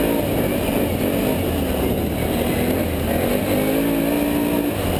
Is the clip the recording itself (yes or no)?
yes